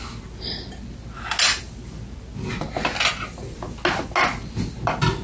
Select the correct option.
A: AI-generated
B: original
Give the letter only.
B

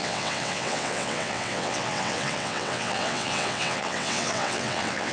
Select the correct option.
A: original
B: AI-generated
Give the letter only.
B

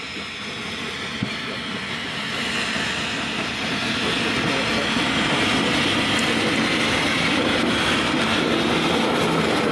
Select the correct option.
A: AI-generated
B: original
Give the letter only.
B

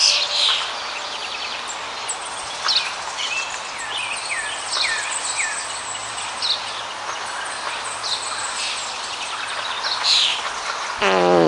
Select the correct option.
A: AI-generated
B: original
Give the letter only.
B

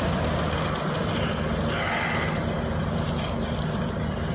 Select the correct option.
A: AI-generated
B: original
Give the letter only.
B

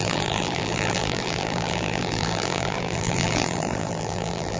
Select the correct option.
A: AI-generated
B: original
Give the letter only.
A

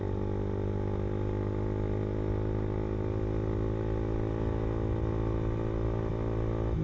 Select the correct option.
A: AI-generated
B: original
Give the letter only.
B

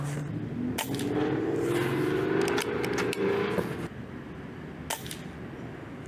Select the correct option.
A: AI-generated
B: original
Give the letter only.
B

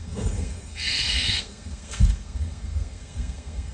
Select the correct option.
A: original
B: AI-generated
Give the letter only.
B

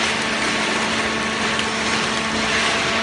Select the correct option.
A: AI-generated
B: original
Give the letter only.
B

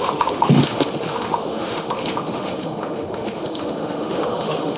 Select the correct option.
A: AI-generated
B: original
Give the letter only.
A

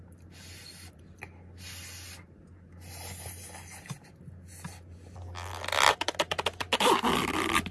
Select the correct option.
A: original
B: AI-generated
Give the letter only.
A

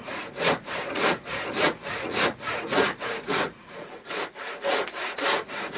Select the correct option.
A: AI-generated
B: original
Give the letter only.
A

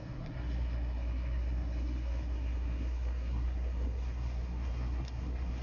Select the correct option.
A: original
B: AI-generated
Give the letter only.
B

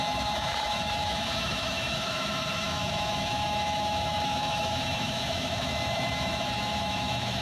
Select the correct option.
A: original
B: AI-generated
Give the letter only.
B